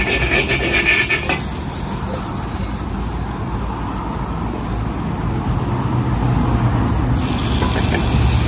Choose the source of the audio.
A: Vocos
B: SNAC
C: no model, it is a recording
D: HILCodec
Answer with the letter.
C